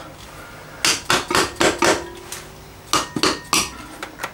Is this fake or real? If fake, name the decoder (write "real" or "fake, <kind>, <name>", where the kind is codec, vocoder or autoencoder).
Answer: real